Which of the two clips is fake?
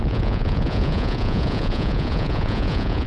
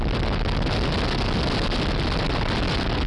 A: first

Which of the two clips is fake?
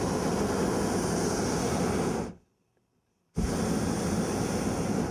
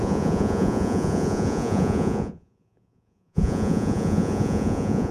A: second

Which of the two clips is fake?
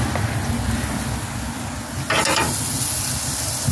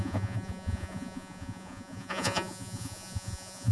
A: second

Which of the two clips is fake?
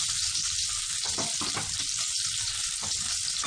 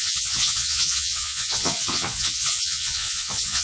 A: second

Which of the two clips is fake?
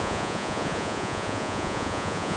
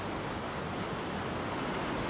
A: first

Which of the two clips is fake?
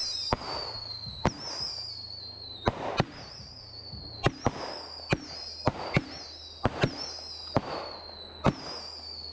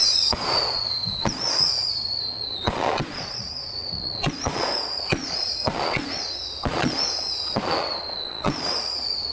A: second